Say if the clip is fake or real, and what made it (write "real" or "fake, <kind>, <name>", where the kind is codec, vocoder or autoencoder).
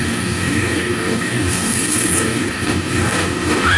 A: fake, codec, DAC